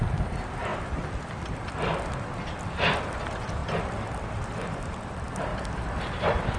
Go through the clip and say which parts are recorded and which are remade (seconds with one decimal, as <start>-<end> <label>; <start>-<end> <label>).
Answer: 0.0-6.6 recorded